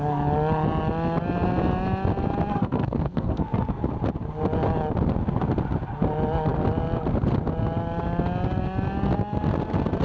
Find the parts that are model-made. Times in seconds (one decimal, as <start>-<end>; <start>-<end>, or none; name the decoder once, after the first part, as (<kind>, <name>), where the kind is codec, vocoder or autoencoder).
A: 2.5-3.8 (codec, SNAC)